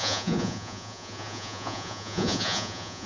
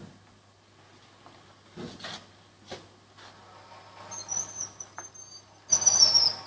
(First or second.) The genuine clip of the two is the second